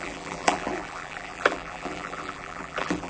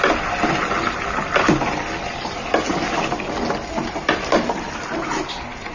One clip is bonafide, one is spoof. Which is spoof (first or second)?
first